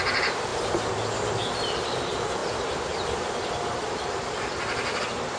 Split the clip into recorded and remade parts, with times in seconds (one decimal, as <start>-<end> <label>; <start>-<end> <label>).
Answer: 0.0-2.4 recorded; 2.4-5.0 remade; 5.0-5.4 recorded